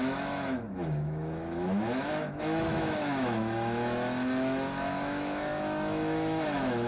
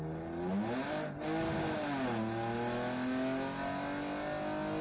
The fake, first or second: first